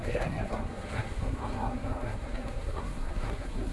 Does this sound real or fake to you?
fake